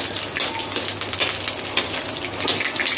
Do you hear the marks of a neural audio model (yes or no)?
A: no